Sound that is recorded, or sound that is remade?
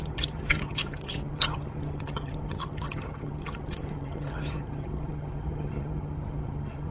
remade